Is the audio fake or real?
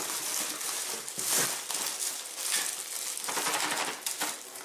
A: real